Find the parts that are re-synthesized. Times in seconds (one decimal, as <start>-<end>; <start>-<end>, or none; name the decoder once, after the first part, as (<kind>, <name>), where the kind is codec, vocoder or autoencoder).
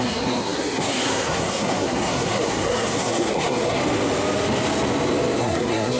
0.0-3.8 (codec, SNAC); 5.4-6.0